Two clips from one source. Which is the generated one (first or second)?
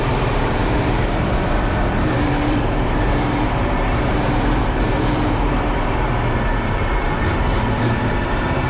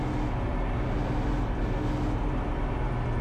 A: first